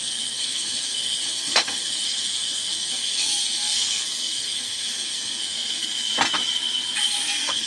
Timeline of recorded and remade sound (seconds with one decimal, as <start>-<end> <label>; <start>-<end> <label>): 0.0-6.1 remade; 6.1-7.1 recorded; 7.1-7.7 remade